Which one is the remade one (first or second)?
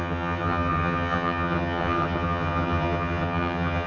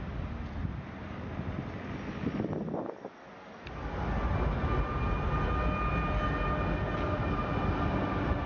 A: first